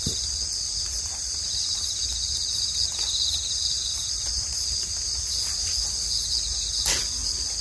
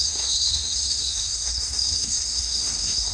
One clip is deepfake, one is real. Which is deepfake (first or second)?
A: second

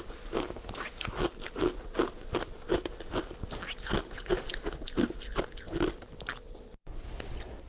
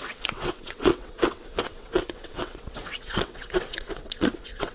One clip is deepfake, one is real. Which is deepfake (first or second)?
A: second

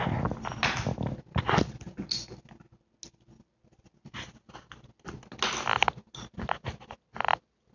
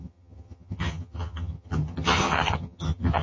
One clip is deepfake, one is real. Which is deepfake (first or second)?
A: second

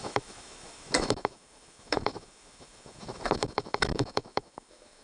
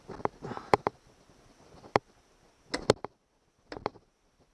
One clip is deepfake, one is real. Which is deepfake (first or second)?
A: first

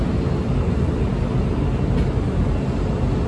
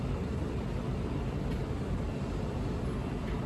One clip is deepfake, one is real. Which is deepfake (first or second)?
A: second